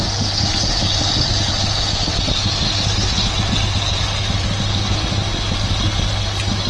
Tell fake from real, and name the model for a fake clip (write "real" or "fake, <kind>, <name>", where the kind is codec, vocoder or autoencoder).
real